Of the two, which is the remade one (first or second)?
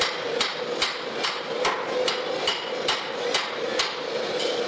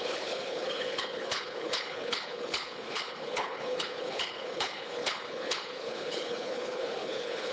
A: second